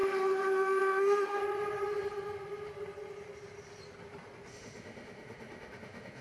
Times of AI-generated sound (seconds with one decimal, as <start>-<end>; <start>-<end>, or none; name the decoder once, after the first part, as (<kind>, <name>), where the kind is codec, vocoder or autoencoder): 0.0-1.4 (autoencoder, DAC-VAE); 4.5-6.2